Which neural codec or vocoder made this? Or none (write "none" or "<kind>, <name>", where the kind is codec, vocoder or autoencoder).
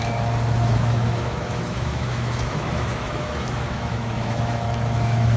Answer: autoencoder, DAC-VAE